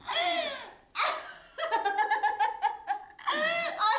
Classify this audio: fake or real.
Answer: real